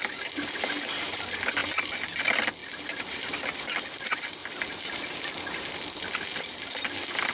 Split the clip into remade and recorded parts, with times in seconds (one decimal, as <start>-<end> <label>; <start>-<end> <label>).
0.0-7.3 recorded